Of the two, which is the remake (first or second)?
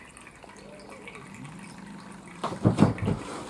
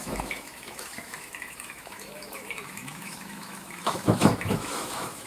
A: second